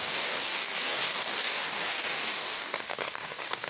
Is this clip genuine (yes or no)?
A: no